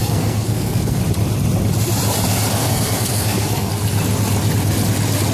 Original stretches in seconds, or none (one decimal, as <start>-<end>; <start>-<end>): 1.0-2.6; 3.7-5.3